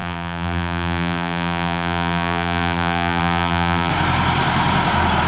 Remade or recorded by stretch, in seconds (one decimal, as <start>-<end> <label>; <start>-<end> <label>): 0.0-3.9 remade; 3.9-5.3 recorded